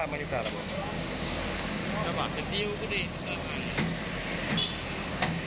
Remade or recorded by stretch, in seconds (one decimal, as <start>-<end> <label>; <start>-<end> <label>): 0.0-1.8 remade; 1.8-5.1 recorded; 5.1-5.5 remade